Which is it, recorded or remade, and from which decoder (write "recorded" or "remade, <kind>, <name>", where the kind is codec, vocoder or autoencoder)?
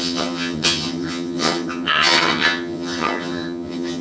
remade, vocoder, HiFi-GAN